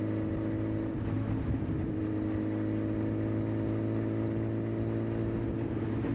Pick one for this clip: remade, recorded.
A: recorded